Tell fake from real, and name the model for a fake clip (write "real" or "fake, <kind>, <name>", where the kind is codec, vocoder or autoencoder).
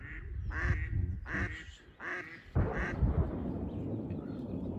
real